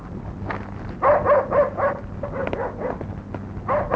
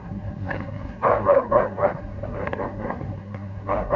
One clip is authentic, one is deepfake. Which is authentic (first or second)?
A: first